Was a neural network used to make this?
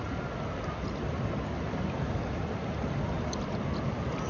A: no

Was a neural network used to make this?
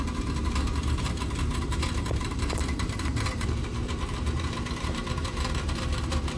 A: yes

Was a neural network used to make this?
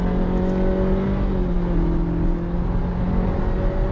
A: no